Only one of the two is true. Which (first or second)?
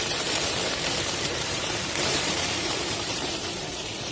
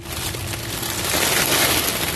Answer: second